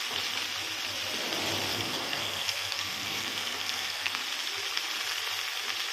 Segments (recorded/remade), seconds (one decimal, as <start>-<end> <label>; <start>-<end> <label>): 0.0-1.7 recorded; 1.7-4.2 remade; 4.2-5.9 recorded